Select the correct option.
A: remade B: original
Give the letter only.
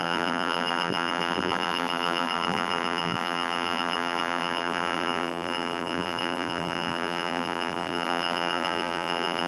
A